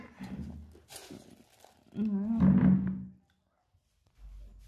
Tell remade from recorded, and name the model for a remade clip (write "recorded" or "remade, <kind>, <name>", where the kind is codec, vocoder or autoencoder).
recorded